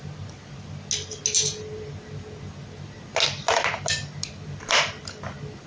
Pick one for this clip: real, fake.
real